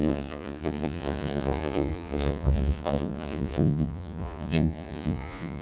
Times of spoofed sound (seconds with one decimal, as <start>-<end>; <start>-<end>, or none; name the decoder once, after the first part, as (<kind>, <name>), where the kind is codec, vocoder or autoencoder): 0.0-5.6 (vocoder, Vocos)